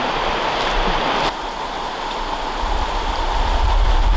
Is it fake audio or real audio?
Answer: real